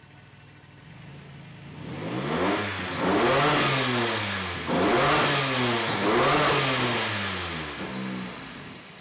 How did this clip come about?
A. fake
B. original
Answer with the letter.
B